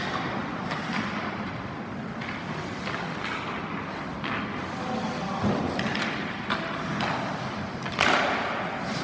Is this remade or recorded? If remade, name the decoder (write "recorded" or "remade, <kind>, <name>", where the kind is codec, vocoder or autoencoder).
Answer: recorded